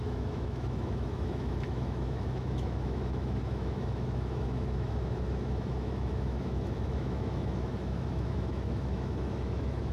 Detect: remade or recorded remade